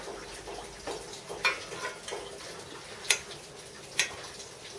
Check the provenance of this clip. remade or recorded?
recorded